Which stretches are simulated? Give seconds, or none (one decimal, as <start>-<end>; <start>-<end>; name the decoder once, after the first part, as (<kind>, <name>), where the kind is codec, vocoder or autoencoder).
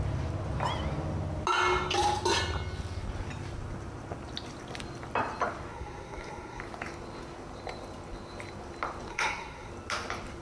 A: 5.7-6.6 (codec, SNAC); 9.1-9.7